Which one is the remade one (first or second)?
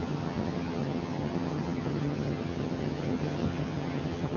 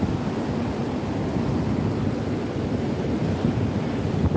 first